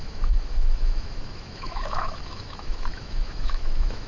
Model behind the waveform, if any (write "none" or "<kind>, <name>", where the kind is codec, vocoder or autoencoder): autoencoder, DAC-VAE